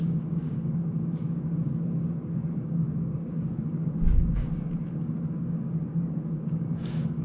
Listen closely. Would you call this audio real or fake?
fake